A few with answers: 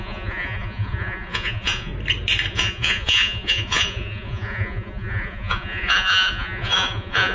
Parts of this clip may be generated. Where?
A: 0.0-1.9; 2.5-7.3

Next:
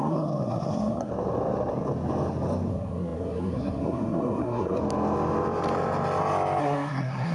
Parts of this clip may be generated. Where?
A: 0.0-1.1; 2.7-4.8; 6.6-7.3

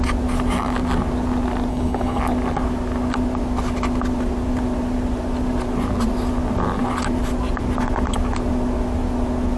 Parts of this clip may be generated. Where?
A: 1.7-2.2

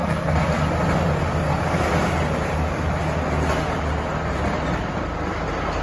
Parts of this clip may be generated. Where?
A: none

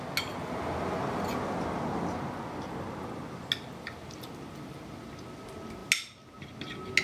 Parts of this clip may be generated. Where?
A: none

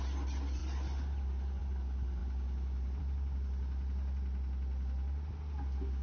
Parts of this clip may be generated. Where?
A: none

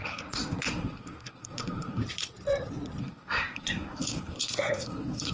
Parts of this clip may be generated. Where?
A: 0.0-2.0; 3.0-5.3